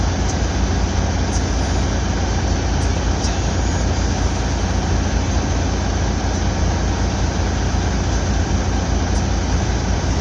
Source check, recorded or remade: recorded